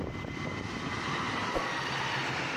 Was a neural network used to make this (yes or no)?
no